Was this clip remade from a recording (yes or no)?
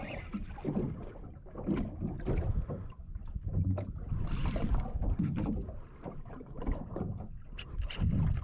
no